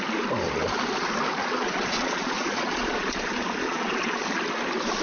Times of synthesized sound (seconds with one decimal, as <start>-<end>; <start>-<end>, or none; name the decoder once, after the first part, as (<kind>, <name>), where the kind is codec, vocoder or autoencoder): 1.4-4.4 (vocoder, Vocos)